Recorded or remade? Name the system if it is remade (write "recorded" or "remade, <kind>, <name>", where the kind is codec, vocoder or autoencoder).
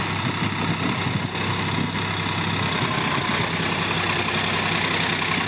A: recorded